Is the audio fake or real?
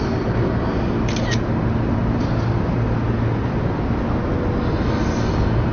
real